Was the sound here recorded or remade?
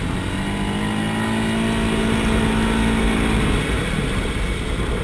recorded